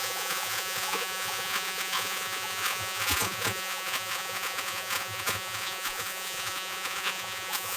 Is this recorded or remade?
remade